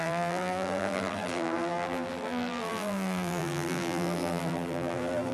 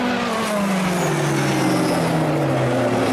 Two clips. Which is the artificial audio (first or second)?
first